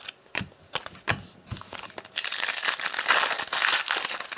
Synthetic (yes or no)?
no